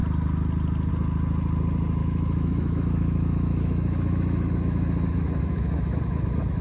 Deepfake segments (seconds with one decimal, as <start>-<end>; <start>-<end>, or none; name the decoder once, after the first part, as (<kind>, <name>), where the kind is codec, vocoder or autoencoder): 2.0-6.0 (autoencoder, DAC-VAE)